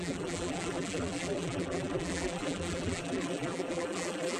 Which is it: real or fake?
fake